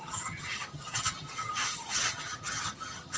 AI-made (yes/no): yes